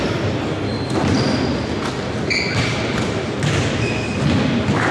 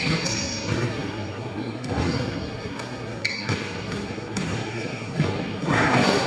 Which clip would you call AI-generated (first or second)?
second